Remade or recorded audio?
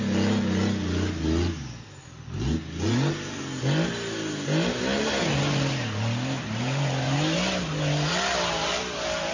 recorded